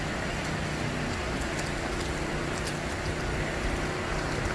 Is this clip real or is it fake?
real